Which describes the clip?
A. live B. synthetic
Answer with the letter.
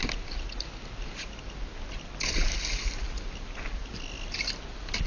A